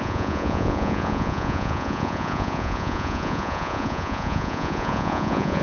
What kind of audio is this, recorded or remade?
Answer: remade